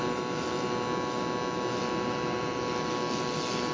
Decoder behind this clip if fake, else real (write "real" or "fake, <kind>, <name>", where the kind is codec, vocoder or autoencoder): real